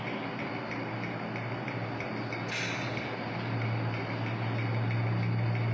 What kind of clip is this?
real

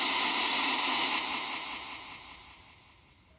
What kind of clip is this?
real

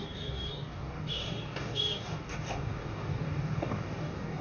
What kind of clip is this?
fake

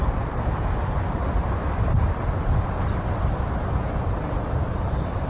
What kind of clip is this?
real